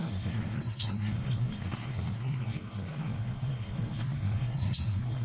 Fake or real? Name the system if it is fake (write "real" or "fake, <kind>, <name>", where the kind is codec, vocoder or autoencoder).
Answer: fake, codec, SNAC